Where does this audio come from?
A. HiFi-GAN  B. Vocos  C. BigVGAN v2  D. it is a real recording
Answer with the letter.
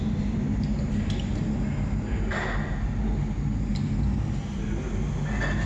D